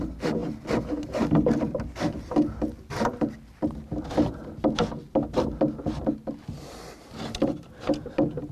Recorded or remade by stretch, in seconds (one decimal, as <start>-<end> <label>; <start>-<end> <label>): 0.0-8.5 recorded